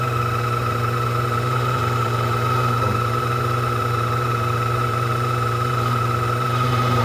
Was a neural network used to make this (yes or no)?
yes